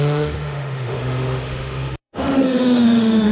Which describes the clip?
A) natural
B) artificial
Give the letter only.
B